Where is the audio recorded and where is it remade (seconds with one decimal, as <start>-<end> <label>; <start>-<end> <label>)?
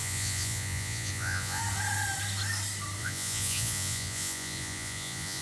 0.0-1.6 remade; 1.6-3.0 recorded; 3.0-5.4 remade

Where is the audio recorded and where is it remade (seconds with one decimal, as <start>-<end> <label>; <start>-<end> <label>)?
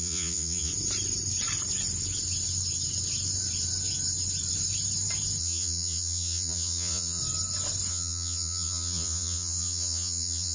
0.0-0.7 remade; 0.7-5.4 recorded; 5.4-7.2 remade; 7.2-7.9 recorded; 7.9-10.5 remade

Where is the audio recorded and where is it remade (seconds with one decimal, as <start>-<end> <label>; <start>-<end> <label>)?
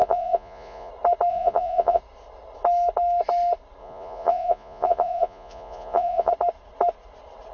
0.0-0.9 remade; 0.9-1.3 recorded; 1.3-2.0 remade; 2.0-3.8 recorded; 3.8-6.3 remade; 6.3-7.5 recorded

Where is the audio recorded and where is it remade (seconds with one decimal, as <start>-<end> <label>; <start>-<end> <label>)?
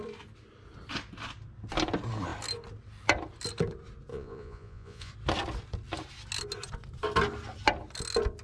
0.0-4.1 recorded; 4.1-5.1 remade; 5.1-8.4 recorded